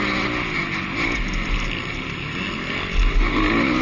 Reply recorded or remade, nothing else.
recorded